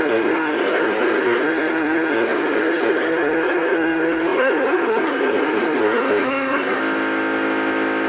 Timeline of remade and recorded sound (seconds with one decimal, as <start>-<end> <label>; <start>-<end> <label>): 0.0-6.8 remade; 6.8-8.1 recorded